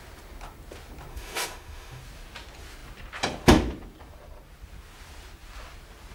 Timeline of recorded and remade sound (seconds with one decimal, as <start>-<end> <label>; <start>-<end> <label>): 0.0-1.1 recorded; 1.1-2.0 remade; 2.0-6.1 recorded